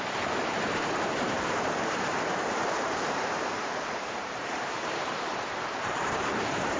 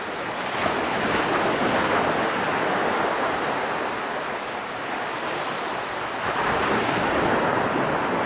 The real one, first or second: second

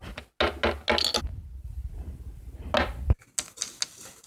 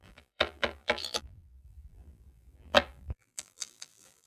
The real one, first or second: first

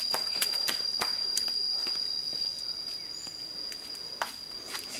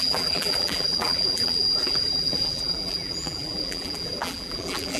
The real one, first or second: first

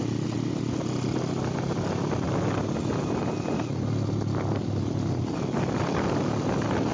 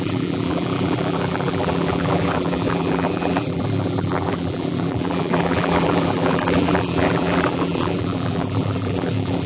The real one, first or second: first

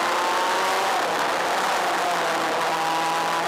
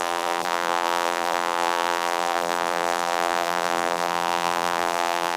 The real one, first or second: first